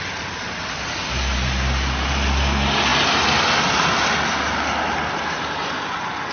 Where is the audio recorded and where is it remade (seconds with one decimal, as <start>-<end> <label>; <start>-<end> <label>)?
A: 0.0-5.6 recorded; 5.6-6.3 remade